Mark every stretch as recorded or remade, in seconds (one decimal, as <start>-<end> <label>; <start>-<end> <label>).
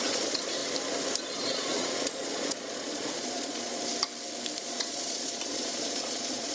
0.0-0.6 remade; 0.6-1.2 recorded; 1.2-3.7 remade; 3.7-4.6 recorded; 4.6-6.5 remade